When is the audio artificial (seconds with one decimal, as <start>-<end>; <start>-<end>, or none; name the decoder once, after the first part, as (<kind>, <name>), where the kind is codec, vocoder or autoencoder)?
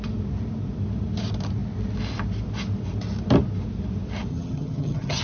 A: 4.3-5.2 (vocoder, HiFi-GAN)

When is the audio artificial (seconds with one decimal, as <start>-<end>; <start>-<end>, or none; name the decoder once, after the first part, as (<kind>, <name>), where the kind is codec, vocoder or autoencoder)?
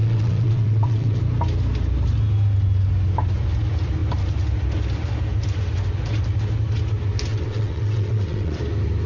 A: 0.0-1.2 (vocoder, WaveNeXt); 7.3-8.6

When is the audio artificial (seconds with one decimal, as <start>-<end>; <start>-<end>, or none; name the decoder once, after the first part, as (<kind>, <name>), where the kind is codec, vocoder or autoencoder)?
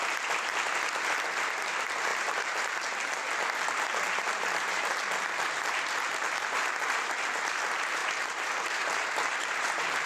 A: 2.1-7.1 (vocoder, BigVGAN v2); 8.0-10.1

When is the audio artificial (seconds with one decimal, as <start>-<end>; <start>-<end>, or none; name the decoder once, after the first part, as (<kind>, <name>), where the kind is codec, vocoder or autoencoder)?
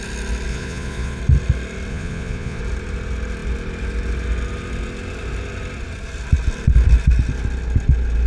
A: 0.5-1.2 (vocoder, Vocos); 1.9-2.6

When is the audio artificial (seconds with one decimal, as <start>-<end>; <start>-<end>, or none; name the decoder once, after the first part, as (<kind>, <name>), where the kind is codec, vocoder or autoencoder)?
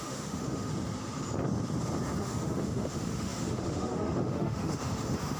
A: 0.0-0.7 (autoencoder, DAC-VAE); 2.2-5.4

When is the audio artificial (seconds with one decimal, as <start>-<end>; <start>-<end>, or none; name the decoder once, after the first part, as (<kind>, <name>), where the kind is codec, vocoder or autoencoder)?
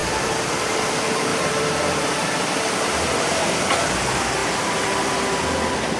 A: 0.0-0.9 (vocoder, BigVGAN v2); 1.3-3.9